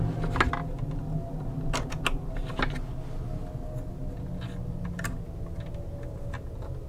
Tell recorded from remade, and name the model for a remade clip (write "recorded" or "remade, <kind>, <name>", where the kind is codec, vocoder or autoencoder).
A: recorded